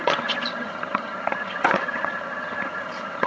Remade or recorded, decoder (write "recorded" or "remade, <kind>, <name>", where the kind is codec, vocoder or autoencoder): remade, vocoder, HiFi-GAN